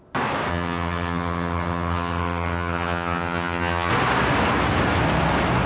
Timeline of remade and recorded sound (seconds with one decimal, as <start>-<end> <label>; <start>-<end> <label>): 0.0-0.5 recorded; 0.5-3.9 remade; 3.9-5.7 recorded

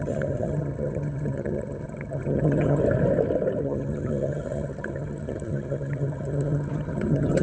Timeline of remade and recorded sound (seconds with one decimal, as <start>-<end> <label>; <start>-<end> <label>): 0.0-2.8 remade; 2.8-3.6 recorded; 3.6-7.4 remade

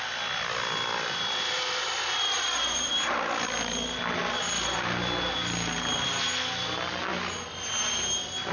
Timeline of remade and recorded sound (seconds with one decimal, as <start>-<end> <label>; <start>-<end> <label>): 0.0-8.5 recorded

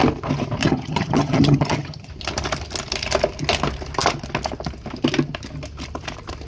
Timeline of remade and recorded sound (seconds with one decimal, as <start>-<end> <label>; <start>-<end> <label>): 0.0-0.6 recorded; 0.6-2.1 remade; 2.1-6.5 recorded

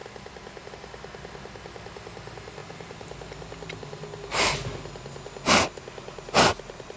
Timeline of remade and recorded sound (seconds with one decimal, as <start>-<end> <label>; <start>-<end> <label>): 0.0-7.0 recorded